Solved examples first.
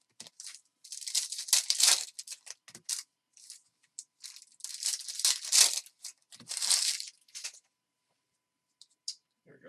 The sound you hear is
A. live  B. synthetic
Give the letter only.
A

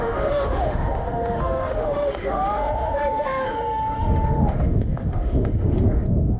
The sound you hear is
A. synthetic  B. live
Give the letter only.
A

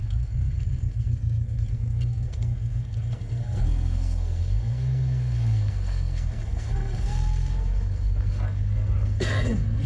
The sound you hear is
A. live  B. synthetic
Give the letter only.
B